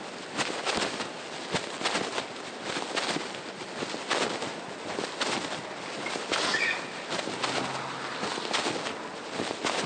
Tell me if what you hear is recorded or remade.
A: recorded